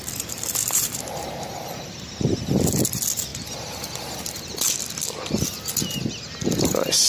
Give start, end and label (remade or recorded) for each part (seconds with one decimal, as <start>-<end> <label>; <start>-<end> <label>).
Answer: 0.0-0.6 recorded; 0.6-2.1 remade; 2.1-7.1 recorded